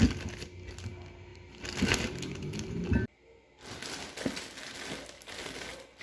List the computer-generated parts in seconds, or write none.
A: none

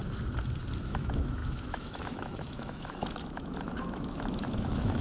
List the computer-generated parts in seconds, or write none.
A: 0.8-5.0 (autoencoder, DAC-VAE)

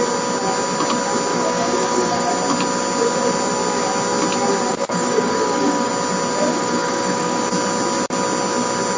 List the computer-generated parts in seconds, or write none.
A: 1.3-2.3 (codec, DAC); 4.7-5.9; 6.5-7.4

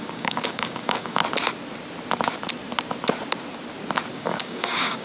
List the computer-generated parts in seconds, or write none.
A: 0.0-1.2 (codec, DAC); 4.1-5.0

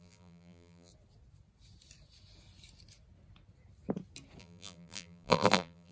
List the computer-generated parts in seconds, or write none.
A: 0.0-0.9 (vocoder, BigVGAN v2); 4.4-5.9

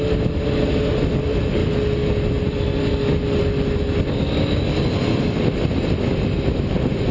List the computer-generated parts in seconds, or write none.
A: none

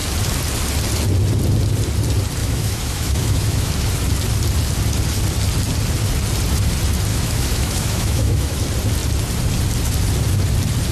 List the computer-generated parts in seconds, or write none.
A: 2.4-3.7 (autoencoder, DAC-VAE); 7.1-8.6